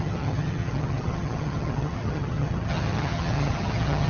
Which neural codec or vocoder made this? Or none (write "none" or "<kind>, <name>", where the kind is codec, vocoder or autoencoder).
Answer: vocoder, HiFi-GAN